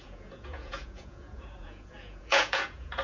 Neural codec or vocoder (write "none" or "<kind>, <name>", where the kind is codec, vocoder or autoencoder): vocoder, Vocos